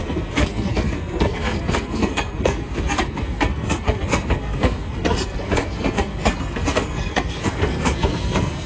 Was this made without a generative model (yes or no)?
no